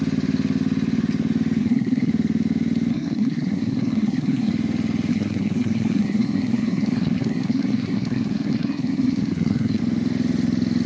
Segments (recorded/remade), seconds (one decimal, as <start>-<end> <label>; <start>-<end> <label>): 0.0-1.6 recorded; 1.6-2.1 remade; 2.1-2.9 recorded; 2.9-4.5 remade; 4.5-5.1 recorded; 5.1-9.8 remade; 9.8-10.9 recorded